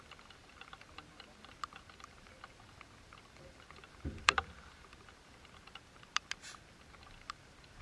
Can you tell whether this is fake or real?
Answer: fake